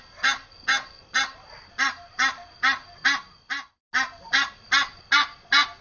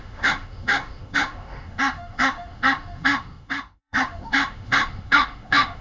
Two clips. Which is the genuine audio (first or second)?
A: first